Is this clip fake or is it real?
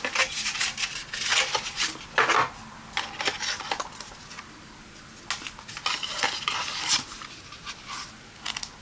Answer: real